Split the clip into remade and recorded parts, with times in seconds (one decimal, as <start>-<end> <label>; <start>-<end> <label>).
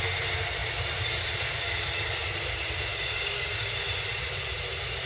0.0-2.9 recorded; 2.9-3.7 remade; 3.7-5.1 recorded